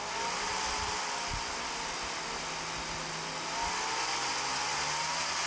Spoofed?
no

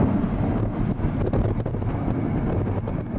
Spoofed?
no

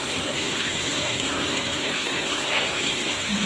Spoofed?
yes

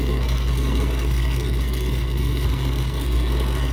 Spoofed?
yes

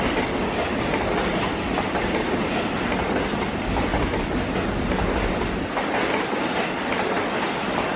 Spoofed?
no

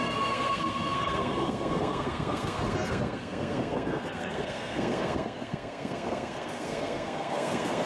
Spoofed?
yes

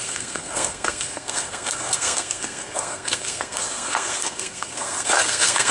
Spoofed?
yes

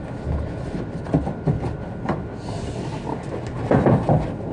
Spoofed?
no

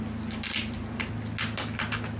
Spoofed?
no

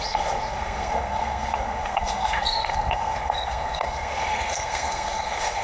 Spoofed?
yes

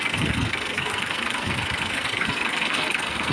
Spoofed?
yes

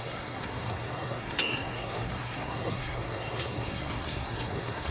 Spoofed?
yes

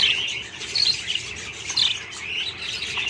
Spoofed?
no